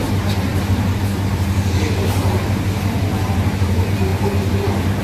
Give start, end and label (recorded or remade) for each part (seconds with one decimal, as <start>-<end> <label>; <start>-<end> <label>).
0.0-5.0 recorded